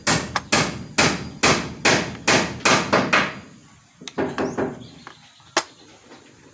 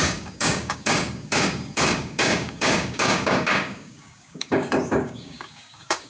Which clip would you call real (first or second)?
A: first